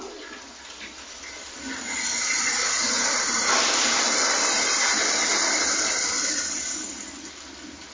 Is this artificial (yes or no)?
no